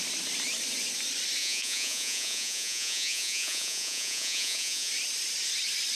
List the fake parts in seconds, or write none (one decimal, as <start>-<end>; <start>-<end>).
1.4-4.9